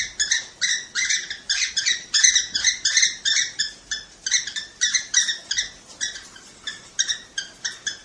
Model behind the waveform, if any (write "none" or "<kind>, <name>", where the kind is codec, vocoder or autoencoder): none